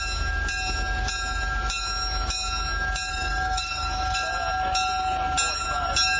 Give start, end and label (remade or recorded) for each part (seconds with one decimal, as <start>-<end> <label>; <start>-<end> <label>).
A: 0.0-3.1 recorded; 3.1-4.3 remade; 4.3-6.2 recorded